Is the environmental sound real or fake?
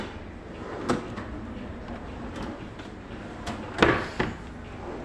real